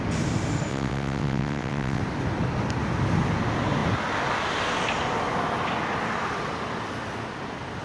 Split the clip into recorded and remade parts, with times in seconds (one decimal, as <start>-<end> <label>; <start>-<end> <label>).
0.0-0.7 recorded; 0.7-2.0 remade; 2.0-7.8 recorded